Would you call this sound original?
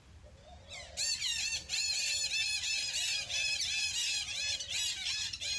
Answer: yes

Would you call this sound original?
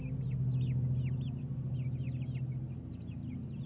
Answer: yes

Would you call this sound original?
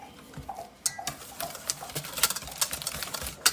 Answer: yes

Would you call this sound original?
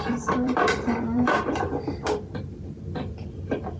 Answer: no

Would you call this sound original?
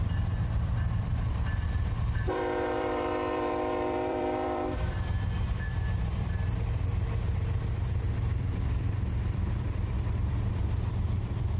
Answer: no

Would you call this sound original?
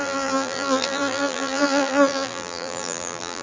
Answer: no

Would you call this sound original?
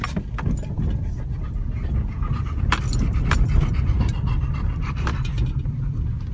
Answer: no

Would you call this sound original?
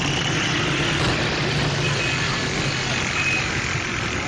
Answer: yes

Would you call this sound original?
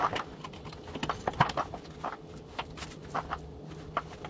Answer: yes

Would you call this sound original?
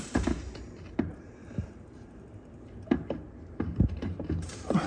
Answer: no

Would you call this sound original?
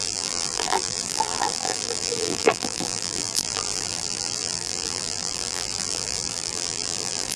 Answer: no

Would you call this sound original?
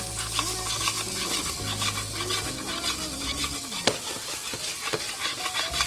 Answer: yes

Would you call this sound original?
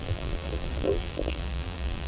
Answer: no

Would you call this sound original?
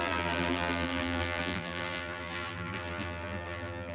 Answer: no